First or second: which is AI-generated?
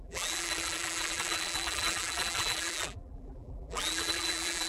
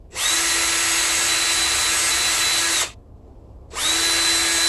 first